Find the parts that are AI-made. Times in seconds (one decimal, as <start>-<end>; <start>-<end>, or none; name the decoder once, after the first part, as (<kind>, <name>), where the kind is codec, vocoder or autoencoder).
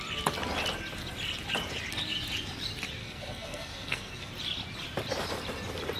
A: 3.0-4.3 (codec, SNAC)